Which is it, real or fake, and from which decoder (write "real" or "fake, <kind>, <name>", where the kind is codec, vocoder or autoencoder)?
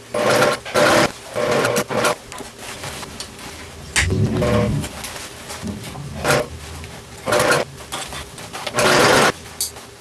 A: real